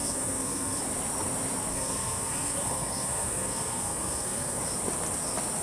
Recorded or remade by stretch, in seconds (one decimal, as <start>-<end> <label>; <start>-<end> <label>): 0.0-0.8 remade; 0.8-1.7 recorded; 1.7-4.6 remade; 4.6-5.6 recorded